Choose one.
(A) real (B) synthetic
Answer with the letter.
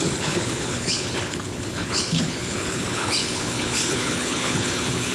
B